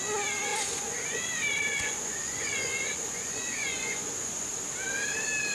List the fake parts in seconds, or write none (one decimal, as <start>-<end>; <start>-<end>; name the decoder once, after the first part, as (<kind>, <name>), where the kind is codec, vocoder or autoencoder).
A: 0.5-1.2 (vocoder, Vocos); 1.7-4.5